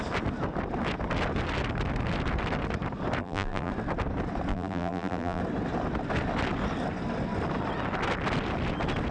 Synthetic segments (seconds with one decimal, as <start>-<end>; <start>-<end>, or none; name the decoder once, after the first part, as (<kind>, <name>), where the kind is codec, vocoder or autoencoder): 3.2-3.7 (vocoder, BigVGAN v2); 4.5-5.4